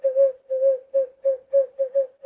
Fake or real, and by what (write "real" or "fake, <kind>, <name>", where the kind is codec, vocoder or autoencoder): real